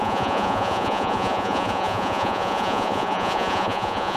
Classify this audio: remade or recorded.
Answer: remade